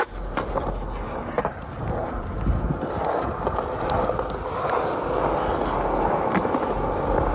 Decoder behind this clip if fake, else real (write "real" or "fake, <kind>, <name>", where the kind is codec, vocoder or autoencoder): real